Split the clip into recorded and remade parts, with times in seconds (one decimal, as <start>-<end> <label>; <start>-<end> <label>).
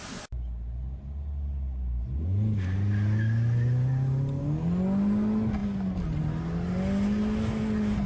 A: 0.0-8.1 recorded